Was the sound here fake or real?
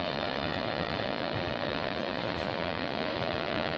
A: fake